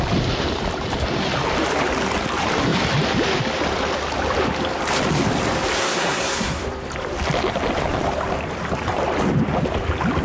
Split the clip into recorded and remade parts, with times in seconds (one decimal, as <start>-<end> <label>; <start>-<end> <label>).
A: 0.0-5.8 recorded; 5.8-6.6 remade; 6.6-10.2 recorded